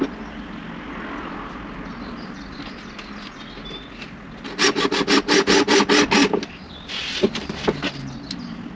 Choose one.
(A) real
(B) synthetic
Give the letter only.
A